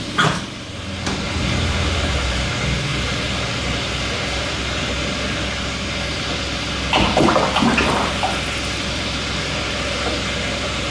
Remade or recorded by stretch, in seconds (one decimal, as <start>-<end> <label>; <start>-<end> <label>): 0.0-10.9 recorded